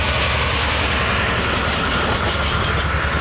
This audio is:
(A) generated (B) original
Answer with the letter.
B